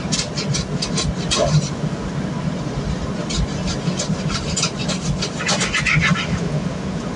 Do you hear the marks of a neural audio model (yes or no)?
no